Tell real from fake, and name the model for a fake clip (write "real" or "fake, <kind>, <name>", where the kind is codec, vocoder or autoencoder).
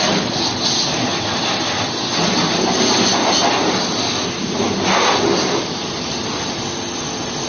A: real